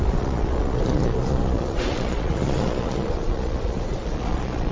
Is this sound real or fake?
fake